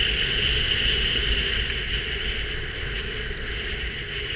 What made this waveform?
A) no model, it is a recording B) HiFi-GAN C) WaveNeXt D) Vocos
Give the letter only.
A